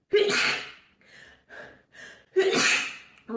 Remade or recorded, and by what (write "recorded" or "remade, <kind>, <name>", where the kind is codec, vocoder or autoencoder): recorded